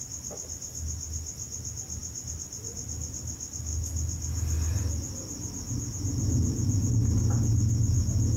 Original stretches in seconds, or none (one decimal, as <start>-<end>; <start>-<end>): 0.0-8.4

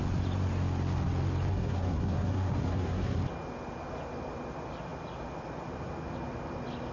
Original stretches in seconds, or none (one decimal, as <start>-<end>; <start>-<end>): 0.0-1.5; 3.2-6.9

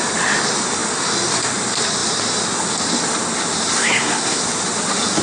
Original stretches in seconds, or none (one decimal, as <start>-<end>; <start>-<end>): 0.0-3.8; 4.4-5.2

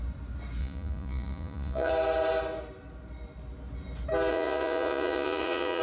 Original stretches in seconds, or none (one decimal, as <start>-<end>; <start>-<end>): 0.0-0.6; 1.9-4.3

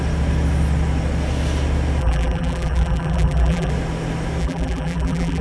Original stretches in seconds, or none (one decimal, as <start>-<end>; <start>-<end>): 0.0-2.0; 3.7-4.4

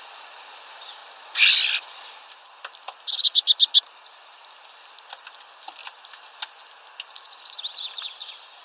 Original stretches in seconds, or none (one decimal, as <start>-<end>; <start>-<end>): 0.0-8.6

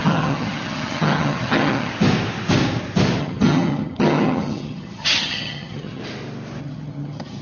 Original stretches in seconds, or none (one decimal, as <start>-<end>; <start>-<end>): 1.9-3.2; 6.0-6.6

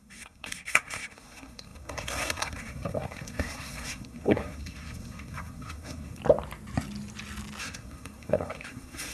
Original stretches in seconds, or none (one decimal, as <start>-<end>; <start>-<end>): 6.2-7.6